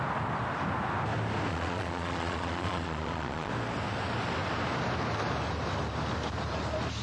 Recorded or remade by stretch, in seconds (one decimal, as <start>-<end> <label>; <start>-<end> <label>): 0.0-1.5 recorded; 1.5-3.5 remade; 3.5-7.0 recorded